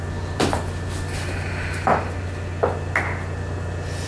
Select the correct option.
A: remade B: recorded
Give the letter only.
A